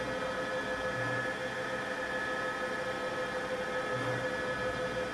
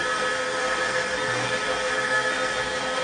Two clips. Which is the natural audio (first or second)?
first